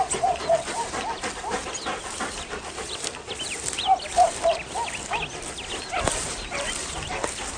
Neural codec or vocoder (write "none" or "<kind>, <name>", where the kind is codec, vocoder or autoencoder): none